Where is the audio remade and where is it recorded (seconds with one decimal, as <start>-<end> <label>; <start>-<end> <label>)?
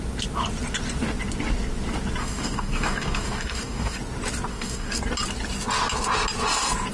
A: 0.0-2.2 recorded; 2.2-4.0 remade; 4.0-4.5 recorded; 4.5-5.0 remade; 5.0-6.9 recorded